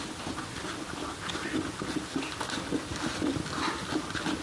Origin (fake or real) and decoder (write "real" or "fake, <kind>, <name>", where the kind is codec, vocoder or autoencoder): real